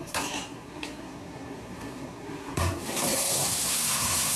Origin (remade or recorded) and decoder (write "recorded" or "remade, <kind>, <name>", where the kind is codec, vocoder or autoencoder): remade, codec, SNAC